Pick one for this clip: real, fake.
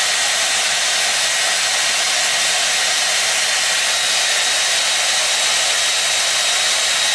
real